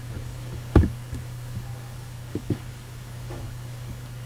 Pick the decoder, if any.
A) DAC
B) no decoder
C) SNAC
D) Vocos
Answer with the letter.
A